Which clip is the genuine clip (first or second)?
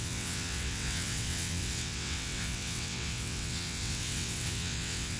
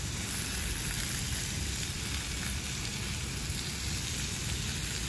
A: second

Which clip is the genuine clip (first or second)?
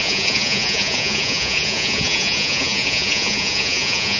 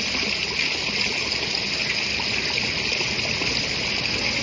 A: second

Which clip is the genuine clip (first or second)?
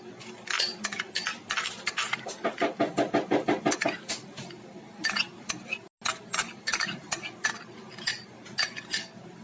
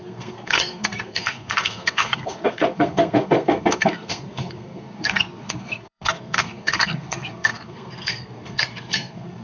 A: first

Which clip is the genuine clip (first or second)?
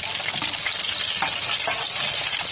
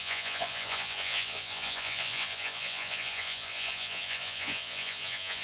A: first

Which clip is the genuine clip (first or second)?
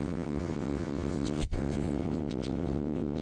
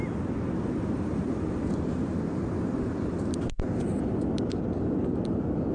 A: second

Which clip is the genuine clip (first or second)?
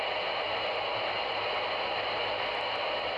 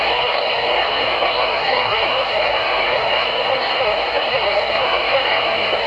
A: first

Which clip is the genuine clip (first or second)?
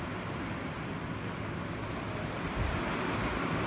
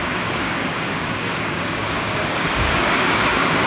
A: first